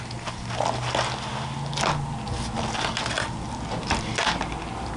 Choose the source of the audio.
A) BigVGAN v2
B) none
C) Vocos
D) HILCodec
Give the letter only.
B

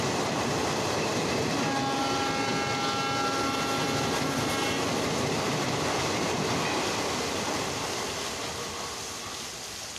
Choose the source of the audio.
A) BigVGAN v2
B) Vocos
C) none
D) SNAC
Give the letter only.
C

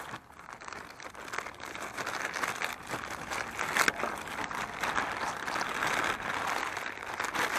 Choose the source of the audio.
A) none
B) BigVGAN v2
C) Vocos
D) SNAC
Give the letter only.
A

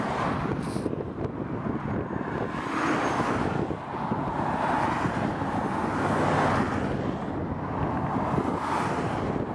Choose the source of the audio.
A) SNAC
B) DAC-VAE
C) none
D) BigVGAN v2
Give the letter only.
C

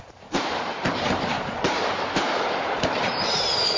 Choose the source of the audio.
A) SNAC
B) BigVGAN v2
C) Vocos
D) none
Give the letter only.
B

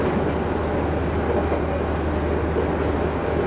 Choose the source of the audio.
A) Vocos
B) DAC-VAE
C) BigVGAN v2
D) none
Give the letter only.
D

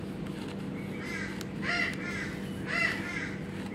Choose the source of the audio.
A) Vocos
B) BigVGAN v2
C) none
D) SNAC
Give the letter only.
C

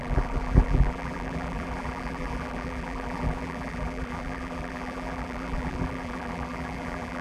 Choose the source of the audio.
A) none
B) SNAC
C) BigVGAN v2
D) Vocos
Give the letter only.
C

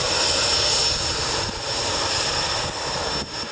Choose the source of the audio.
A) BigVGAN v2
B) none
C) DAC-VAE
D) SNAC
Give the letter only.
B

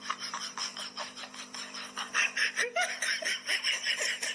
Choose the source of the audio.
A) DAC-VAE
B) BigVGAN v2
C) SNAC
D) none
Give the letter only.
B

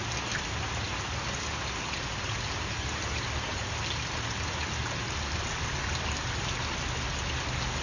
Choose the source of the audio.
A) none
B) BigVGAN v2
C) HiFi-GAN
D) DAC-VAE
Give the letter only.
A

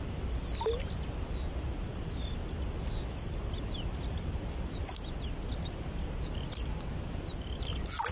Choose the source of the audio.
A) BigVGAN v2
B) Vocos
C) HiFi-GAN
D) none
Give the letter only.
D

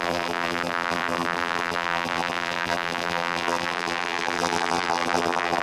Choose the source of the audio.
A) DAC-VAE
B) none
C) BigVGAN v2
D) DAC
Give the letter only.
C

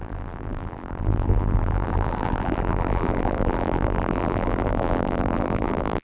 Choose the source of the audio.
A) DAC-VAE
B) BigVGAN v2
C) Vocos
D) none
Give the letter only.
B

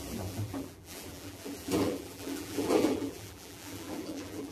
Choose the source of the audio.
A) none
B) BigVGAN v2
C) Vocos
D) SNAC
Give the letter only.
B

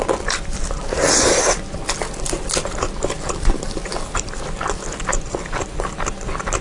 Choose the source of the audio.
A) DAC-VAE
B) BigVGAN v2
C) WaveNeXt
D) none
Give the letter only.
D